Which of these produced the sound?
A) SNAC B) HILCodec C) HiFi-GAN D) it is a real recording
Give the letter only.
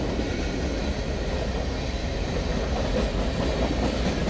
D